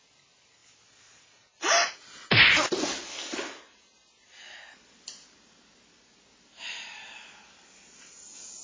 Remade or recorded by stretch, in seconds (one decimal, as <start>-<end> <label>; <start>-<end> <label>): 0.0-8.6 recorded